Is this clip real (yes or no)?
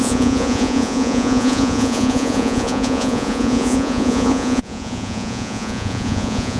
no